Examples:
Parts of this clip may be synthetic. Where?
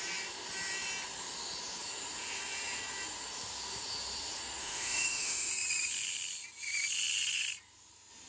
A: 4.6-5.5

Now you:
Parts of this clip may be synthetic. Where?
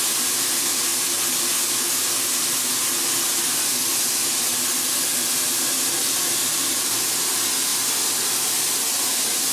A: none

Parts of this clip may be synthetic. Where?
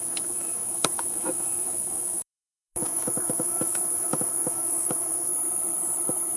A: 0.0-5.3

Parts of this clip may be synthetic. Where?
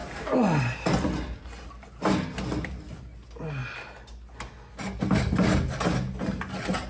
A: none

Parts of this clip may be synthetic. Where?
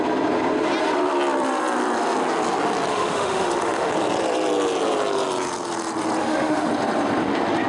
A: 2.9-3.9; 6.2-6.7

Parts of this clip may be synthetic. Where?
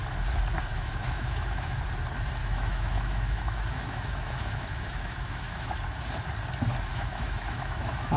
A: 0.7-1.8; 2.4-5.7; 6.9-8.2